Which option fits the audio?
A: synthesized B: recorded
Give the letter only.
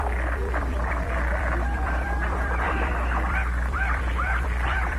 A